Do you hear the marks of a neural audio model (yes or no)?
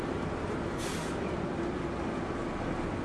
no